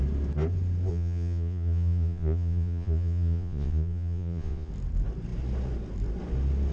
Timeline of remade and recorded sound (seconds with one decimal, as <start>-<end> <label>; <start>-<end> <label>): 0.0-0.9 recorded; 0.9-4.7 remade; 4.7-6.7 recorded